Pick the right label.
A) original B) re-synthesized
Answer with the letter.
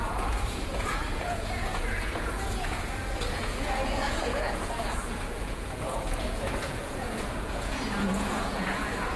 B